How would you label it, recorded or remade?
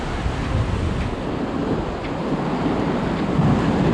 recorded